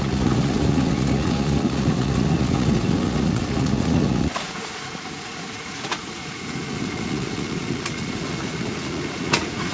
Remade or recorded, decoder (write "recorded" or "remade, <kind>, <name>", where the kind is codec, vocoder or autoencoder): remade, vocoder, Vocos